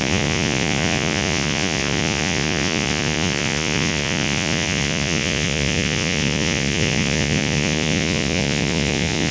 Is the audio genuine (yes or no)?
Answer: no